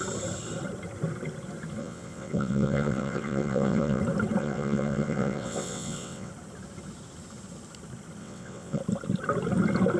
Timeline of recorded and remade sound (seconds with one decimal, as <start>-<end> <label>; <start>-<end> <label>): 0.0-1.8 recorded; 1.8-4.0 remade; 4.0-4.4 recorded; 4.4-6.3 remade; 6.3-8.2 recorded; 8.2-8.8 remade; 8.8-10.0 recorded